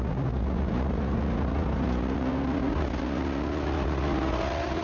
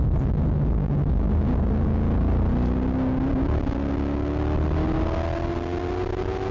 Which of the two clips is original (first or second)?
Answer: second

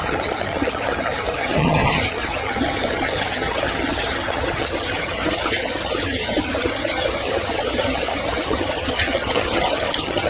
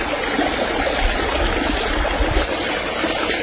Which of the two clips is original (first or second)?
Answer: second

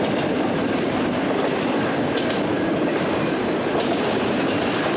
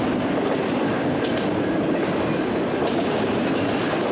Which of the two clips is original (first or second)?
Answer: second